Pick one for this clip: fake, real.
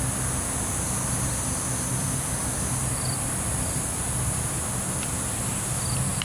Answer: real